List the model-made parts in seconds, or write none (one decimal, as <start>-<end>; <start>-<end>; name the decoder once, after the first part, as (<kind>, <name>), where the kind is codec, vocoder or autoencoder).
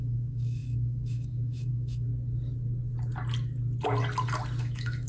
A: 0.0-2.1 (autoencoder, DAC-VAE); 4.6-5.1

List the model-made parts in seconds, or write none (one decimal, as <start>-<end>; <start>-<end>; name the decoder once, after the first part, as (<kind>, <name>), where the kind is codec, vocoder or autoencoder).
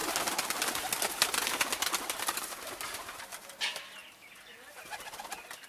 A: 0.0-3.4 (vocoder, BigVGAN v2); 4.0-5.2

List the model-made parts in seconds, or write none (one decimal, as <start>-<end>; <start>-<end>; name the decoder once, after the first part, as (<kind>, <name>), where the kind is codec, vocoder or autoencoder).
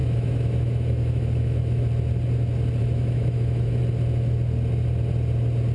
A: 0.0-1.9 (autoencoder, DAC-VAE); 2.8-3.8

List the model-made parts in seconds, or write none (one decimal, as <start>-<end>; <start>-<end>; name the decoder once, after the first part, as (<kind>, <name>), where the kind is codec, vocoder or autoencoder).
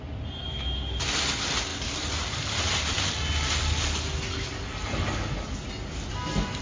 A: 0.4-1.0 (autoencoder, DAC-VAE)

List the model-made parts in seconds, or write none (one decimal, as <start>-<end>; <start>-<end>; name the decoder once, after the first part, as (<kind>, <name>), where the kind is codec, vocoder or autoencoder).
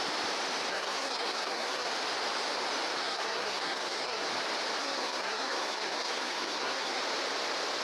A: 0.7-1.9 (codec, SNAC); 3.0-4.3; 4.8-7.0